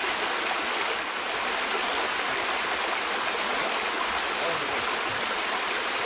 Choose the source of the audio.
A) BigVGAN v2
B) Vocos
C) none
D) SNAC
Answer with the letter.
C